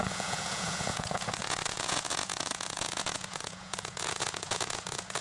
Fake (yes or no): yes